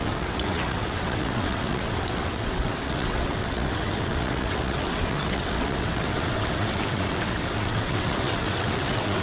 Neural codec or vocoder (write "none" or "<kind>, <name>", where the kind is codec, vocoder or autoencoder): vocoder, WaveNeXt